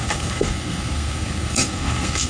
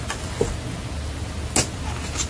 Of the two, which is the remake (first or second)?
first